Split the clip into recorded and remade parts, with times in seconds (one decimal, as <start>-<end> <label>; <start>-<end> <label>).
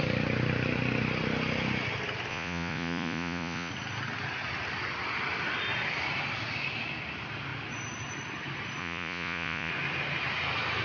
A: 0.0-2.3 recorded; 2.3-3.7 remade; 3.7-8.8 recorded; 8.8-9.7 remade; 9.7-10.8 recorded